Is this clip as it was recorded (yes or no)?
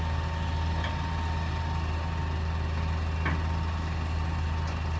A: yes